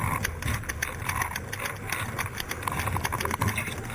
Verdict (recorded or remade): recorded